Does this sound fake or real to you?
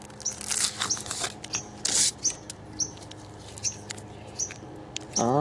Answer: real